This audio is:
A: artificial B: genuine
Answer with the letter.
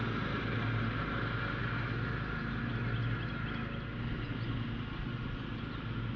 B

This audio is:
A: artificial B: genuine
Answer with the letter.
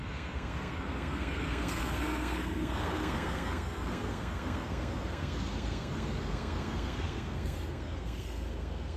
A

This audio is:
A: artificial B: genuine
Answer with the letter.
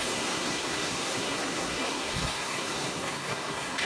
A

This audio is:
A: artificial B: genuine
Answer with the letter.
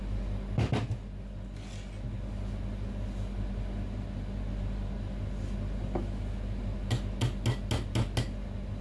B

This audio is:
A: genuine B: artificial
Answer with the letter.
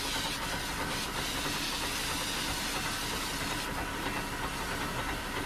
A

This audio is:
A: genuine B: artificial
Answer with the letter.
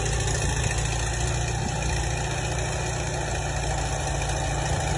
A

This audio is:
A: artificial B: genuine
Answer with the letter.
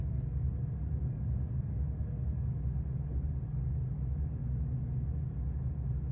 B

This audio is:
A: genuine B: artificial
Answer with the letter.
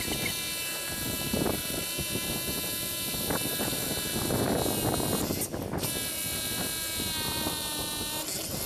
A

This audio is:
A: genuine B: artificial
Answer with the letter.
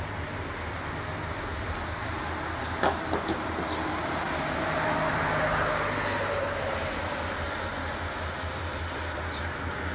A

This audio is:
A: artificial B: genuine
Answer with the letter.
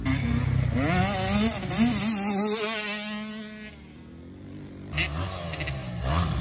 B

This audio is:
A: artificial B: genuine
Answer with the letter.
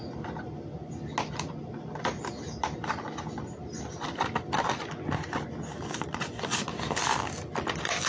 B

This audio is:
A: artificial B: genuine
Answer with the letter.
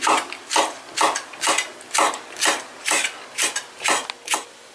B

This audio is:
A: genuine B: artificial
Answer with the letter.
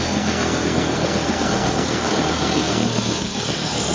B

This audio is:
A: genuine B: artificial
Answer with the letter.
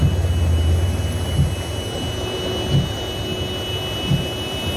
A